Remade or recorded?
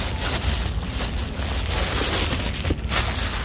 recorded